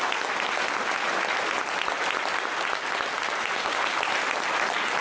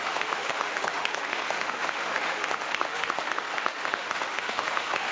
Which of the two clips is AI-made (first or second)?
second